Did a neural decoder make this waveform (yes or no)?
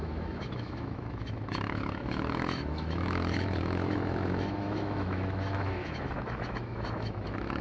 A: yes